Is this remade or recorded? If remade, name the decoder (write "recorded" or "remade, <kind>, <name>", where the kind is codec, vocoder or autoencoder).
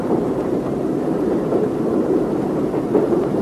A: remade, vocoder, BigVGAN v2